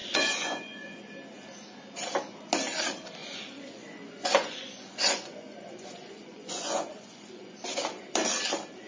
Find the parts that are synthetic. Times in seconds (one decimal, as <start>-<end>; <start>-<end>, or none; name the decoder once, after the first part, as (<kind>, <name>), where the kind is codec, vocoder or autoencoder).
0.0-1.1 (vocoder, Vocos); 3.2-7.6